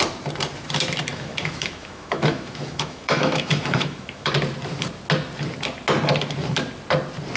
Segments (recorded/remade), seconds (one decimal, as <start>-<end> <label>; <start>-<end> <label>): 0.0-1.1 recorded; 1.1-4.3 remade; 4.3-7.4 recorded

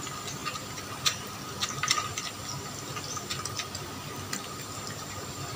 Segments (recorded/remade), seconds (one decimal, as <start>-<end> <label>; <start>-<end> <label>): 0.0-5.6 recorded

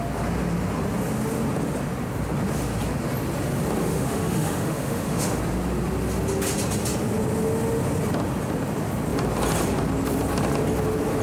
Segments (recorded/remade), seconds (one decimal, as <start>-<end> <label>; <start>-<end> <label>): 0.0-3.8 recorded; 3.8-5.4 remade; 5.4-11.2 recorded